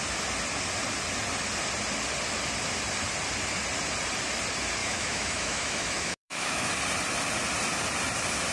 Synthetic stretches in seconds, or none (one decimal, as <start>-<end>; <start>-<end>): 4.8-6.7